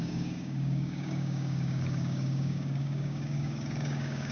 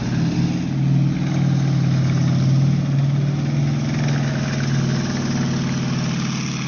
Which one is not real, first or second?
first